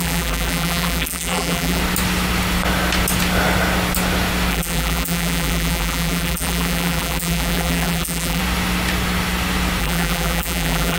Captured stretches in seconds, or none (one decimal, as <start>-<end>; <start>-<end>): 1.8-4.5; 8.4-9.8